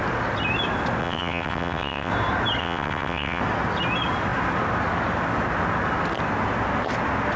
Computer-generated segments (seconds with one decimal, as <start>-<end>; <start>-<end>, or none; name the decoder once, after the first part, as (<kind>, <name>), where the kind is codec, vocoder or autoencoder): 1.0-2.1 (vocoder, WaveNeXt); 2.6-3.4